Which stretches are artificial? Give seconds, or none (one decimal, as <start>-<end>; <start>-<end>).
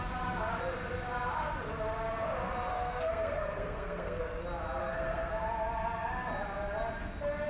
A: 2.7-4.2; 4.8-5.3